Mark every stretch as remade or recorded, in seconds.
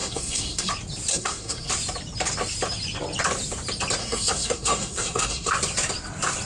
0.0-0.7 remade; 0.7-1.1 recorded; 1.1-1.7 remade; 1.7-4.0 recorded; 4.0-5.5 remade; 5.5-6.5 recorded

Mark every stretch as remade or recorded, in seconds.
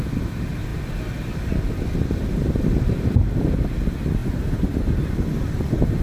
0.0-6.0 recorded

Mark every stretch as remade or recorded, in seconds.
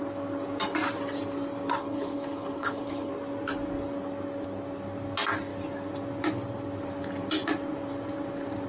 0.0-1.8 recorded; 1.8-3.1 remade; 3.1-8.7 recorded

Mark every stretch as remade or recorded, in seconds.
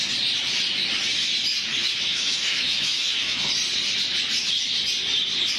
0.0-1.7 recorded; 1.7-3.4 remade; 3.4-5.6 recorded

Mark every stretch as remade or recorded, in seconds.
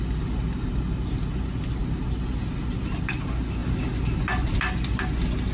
0.0-5.5 recorded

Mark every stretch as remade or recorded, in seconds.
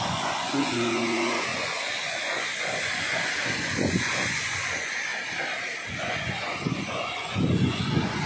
0.0-5.1 remade; 5.1-5.9 recorded; 5.9-8.3 remade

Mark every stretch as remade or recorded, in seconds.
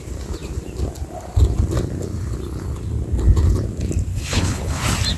0.0-4.1 recorded; 4.1-4.8 remade; 4.8-5.2 recorded